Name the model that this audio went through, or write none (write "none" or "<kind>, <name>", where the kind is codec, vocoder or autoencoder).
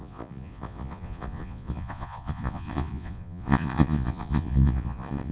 vocoder, Vocos